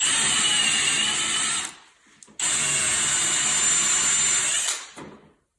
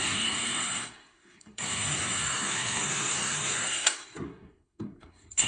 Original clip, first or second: first